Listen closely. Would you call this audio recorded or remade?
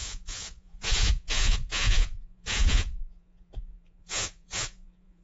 remade